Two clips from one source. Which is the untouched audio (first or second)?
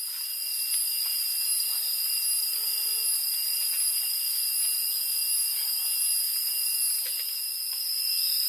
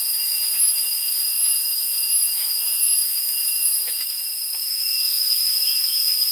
first